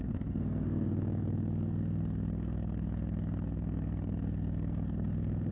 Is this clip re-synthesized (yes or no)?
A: yes